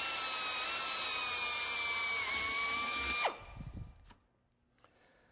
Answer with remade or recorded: recorded